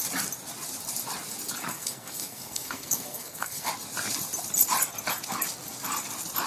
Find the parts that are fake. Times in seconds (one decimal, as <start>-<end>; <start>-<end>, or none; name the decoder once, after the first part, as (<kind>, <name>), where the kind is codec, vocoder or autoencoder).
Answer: 1.7-3.7 (codec, SNAC)